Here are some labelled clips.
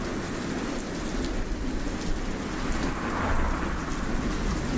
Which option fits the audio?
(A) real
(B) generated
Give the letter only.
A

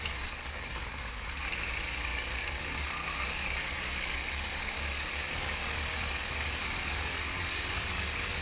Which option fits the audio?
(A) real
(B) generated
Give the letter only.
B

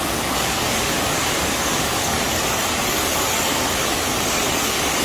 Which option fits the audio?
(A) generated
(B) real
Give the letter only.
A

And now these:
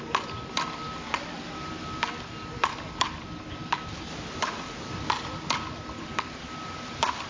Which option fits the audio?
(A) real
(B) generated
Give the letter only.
A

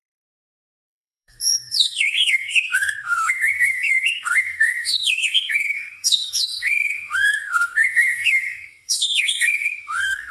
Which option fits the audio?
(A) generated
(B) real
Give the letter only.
A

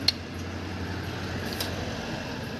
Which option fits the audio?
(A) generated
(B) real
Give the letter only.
B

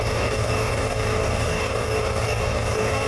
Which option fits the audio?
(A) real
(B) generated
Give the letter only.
B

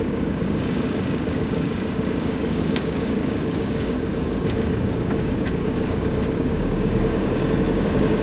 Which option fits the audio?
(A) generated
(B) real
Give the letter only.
A